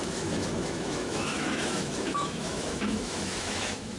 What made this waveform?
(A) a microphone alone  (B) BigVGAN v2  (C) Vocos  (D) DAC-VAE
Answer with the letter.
D